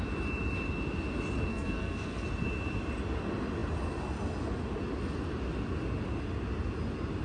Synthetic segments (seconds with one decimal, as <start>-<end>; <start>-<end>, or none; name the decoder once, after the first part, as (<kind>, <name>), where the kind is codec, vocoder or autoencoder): 1.5-2.3 (codec, SNAC)